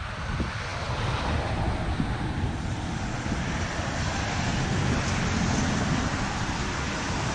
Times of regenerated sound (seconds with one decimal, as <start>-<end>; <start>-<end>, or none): none